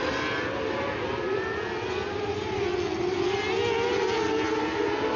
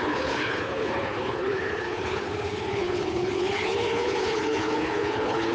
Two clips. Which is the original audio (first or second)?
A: first